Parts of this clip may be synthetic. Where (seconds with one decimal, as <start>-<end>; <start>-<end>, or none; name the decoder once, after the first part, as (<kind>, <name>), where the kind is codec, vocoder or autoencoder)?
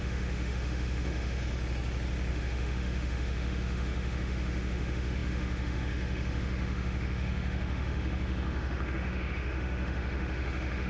0.0-1.4 (autoencoder, DAC-VAE); 2.3-10.9